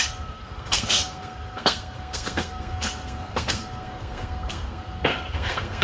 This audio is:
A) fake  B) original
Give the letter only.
A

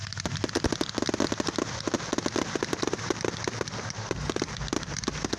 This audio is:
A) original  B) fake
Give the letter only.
A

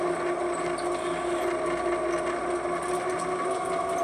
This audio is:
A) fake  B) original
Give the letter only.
B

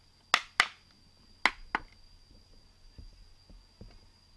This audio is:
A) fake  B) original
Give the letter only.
B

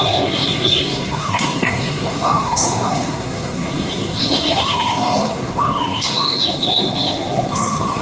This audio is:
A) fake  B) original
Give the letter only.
A